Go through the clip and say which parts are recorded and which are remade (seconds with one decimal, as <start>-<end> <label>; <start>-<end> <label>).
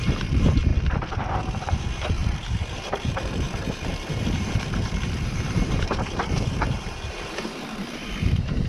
0.0-0.7 remade; 0.7-1.3 recorded; 1.3-8.7 remade